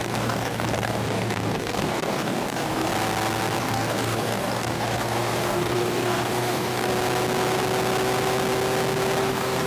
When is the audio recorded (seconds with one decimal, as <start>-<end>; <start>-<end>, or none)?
2.9-3.6; 6.9-9.2

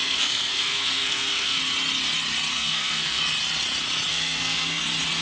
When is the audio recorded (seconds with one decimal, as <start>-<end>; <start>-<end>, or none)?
1.6-2.5; 3.2-4.1; 4.8-5.2

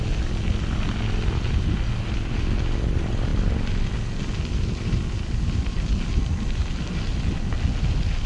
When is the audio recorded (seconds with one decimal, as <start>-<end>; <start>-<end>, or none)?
0.0-8.3

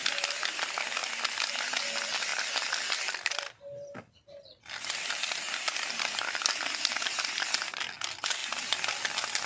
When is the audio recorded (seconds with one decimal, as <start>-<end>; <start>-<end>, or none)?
0.0-1.0; 1.5-2.3; 7.2-9.5

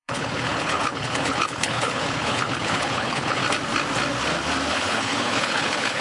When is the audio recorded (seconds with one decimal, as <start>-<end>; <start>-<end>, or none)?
3.4-4.7

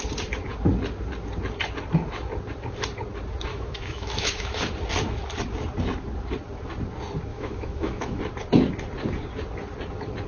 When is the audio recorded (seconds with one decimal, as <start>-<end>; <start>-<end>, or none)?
0.0-3.5; 4.6-7.3; 8.2-10.3

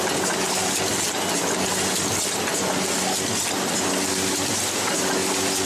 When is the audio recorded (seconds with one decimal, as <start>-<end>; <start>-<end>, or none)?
0.0-5.7